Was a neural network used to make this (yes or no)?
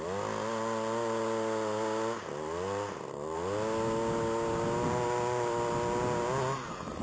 no